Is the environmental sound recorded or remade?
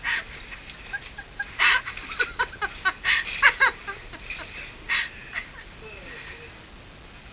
recorded